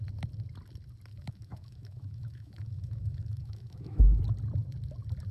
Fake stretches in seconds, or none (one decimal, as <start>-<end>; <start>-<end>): 1.1-4.2